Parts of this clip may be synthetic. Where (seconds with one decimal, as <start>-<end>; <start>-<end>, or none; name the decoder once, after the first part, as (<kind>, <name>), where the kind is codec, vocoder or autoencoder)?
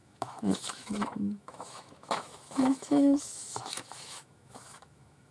0.0-5.3 (autoencoder, DAC-VAE)